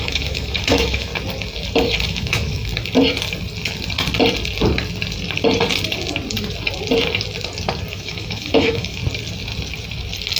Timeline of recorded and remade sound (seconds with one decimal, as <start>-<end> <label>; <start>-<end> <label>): 0.0-1.1 remade; 1.1-2.1 recorded; 2.1-2.7 remade; 2.7-7.9 recorded; 7.9-9.0 remade; 9.0-10.4 recorded